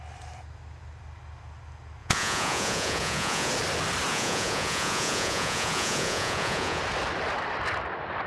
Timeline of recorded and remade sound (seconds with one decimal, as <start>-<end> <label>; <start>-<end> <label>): 0.0-2.0 recorded; 2.0-3.5 remade; 3.5-4.1 recorded; 4.1-6.8 remade; 6.8-8.3 recorded